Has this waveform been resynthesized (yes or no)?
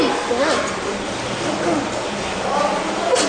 no